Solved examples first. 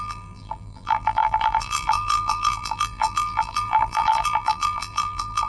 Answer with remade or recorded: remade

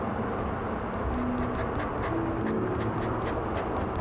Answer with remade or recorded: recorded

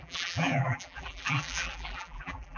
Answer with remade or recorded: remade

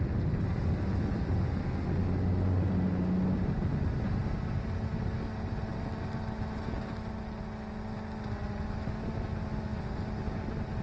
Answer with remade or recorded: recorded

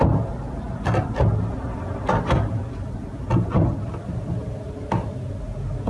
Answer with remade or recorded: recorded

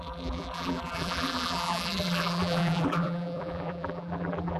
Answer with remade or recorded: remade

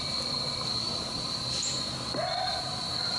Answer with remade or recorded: remade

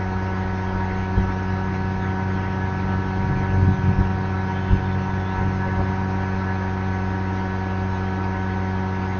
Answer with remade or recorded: recorded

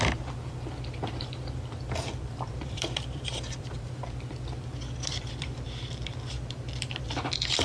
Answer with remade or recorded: remade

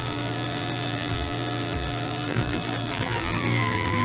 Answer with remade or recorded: remade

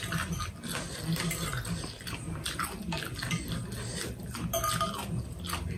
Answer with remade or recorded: recorded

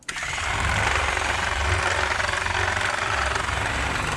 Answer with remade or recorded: recorded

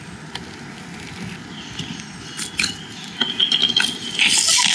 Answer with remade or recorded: recorded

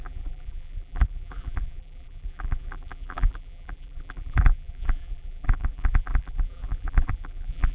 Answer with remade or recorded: remade